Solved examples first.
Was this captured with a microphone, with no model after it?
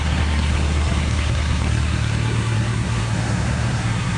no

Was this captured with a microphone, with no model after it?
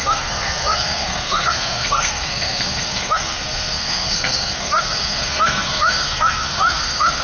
no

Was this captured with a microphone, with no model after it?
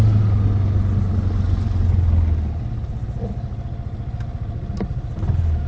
yes